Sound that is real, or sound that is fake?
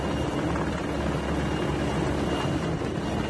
real